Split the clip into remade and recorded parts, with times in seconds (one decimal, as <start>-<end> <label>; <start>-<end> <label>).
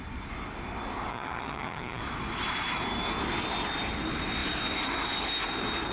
0.0-1.1 recorded; 1.1-2.0 remade; 2.0-5.9 recorded